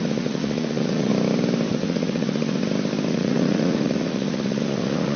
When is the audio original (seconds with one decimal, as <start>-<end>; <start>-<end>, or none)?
1.1-1.7; 2.6-3.1